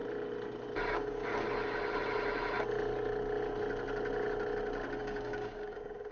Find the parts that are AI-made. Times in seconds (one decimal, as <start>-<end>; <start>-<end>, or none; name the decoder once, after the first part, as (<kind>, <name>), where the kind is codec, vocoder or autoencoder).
0.9-1.3 (codec, DAC); 5.0-6.1